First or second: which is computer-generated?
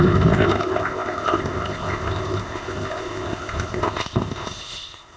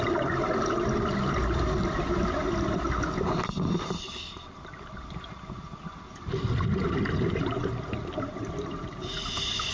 first